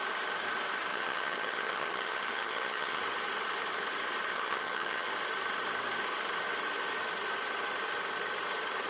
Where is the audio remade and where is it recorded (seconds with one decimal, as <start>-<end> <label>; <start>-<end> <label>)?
0.0-0.9 recorded; 0.9-3.0 remade; 3.0-4.3 recorded; 4.3-5.1 remade; 5.1-8.9 recorded